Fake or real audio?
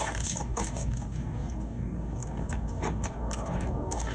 fake